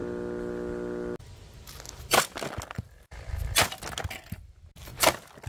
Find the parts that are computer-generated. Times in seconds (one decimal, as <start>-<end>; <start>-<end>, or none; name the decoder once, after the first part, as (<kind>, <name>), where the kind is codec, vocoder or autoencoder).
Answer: none